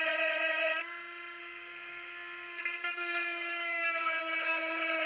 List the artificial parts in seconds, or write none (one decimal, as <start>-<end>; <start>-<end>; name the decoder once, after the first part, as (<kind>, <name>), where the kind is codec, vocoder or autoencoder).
1.4-4.2 (codec, SNAC)